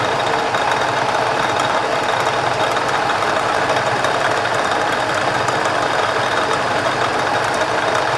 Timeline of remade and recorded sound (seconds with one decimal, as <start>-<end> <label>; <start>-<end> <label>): 0.0-8.2 remade